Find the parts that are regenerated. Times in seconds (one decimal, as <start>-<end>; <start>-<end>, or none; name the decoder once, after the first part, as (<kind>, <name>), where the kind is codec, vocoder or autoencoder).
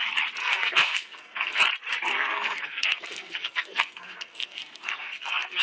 0.4-1.6 (codec, SNAC); 2.1-5.6